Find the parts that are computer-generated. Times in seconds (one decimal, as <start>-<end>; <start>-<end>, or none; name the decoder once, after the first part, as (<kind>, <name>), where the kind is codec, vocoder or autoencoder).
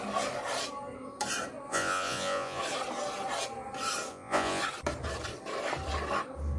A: 1.7-2.6 (vocoder, Vocos); 4.1-4.6